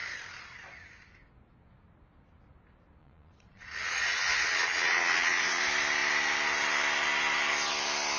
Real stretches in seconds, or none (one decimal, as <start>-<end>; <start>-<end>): 0.0-3.0; 5.6-8.2